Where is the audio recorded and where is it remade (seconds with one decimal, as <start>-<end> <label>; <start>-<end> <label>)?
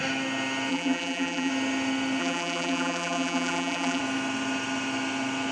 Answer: 0.0-0.7 recorded; 0.7-1.5 remade; 1.5-2.2 recorded; 2.2-4.0 remade; 4.0-5.5 recorded